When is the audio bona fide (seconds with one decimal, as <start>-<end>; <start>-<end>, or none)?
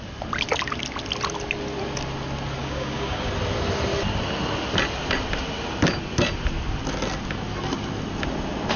0.0-2.6; 3.3-8.8